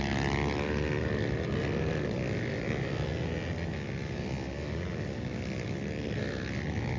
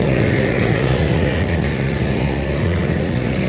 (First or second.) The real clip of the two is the first